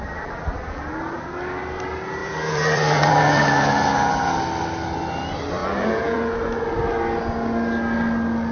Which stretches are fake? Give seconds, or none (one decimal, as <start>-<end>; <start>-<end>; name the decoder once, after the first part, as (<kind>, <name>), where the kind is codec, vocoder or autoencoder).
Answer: 0.0-1.0 (vocoder, BigVGAN v2); 2.2-4.3; 5.6-6.3